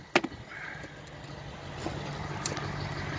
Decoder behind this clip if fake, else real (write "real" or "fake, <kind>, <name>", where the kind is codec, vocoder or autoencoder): real